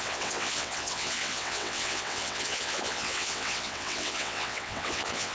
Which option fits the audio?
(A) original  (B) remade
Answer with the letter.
B